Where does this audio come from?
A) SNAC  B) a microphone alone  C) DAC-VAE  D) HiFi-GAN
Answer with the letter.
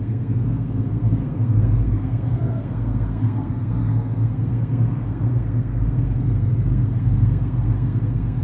A